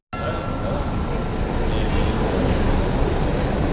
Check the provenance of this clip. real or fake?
real